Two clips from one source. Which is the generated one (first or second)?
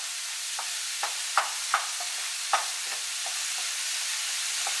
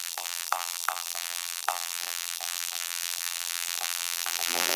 second